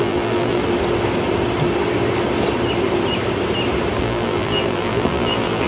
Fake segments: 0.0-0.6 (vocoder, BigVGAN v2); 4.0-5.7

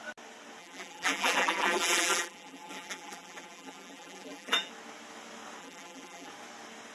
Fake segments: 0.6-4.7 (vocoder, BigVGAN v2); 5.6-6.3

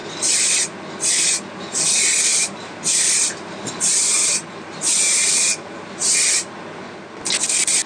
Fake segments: 2.3-6.2 (vocoder, BigVGAN v2)

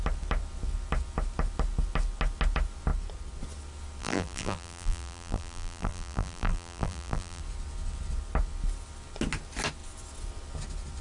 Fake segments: 4.0-7.4 (vocoder, BigVGAN v2)

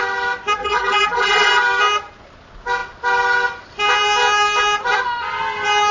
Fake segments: 0.6-1.5 (vocoder, BigVGAN v2)

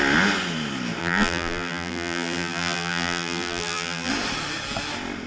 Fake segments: 1.0-4.1 (vocoder, BigVGAN v2)

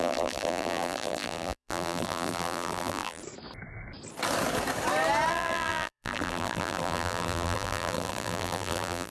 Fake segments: 0.0-3.2 (vocoder, BigVGAN v2); 5.3-9.1

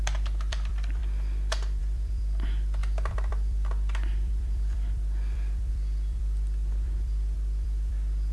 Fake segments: 0.0-1.0 (vocoder, BigVGAN v2); 1.8-8.3